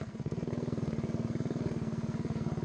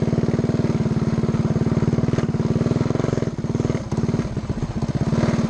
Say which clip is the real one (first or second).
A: second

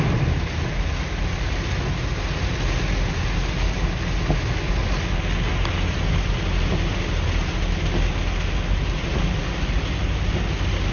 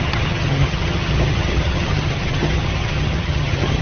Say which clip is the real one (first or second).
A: first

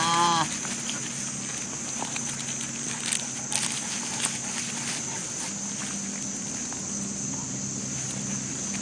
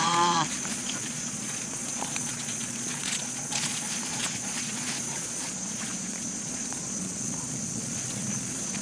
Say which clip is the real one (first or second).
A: first